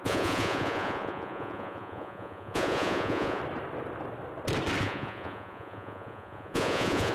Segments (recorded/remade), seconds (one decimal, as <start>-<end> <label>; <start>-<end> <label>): 0.0-3.4 remade; 3.4-4.8 recorded; 4.8-7.1 remade